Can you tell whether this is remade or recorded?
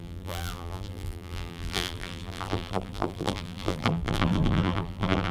remade